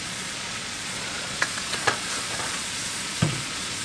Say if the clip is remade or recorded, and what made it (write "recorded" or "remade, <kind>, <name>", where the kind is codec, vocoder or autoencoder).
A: remade, vocoder, Vocos